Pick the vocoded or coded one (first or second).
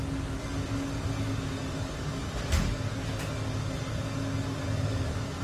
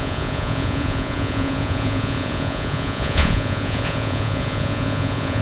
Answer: second